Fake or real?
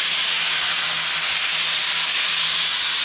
real